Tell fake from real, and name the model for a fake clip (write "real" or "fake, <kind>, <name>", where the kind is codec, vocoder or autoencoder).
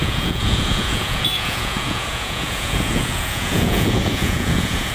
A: fake, vocoder, Vocos